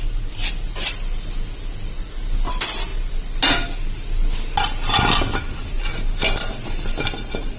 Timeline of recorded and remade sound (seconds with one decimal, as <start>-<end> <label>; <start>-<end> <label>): 0.0-7.6 recorded